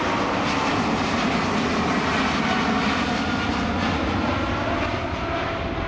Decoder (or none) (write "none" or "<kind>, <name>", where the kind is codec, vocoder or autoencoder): none